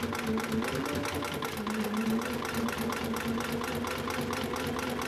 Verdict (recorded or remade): recorded